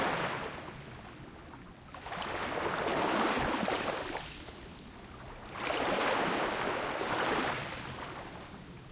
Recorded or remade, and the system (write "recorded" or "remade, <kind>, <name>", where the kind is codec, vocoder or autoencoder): recorded